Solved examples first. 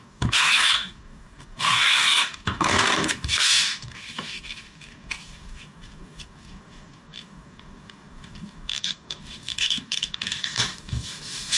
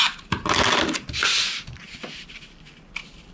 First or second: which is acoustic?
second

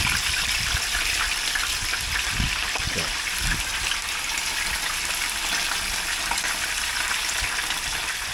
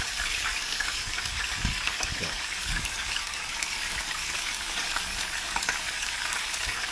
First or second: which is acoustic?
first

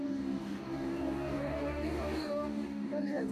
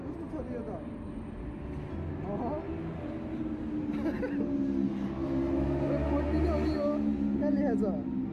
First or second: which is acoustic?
second